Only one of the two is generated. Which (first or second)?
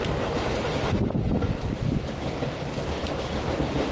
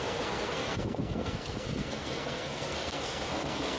second